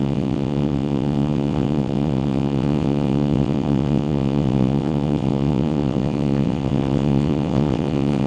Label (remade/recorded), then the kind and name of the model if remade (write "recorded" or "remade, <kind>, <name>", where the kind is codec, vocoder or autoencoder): remade, vocoder, WaveNeXt